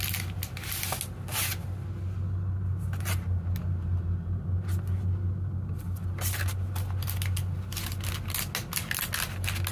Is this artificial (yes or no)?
no